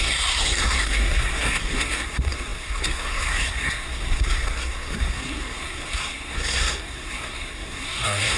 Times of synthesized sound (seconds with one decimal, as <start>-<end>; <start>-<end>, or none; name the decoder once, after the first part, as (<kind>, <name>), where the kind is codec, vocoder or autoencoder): 0.0-8.4 (codec, SNAC)